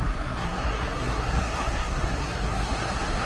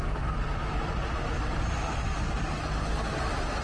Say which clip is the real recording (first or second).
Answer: second